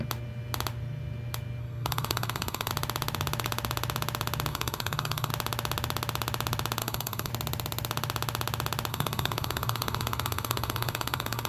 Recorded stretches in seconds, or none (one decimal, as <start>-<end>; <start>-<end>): 0.0-1.6; 2.7-4.5; 5.3-6.8; 7.3-8.9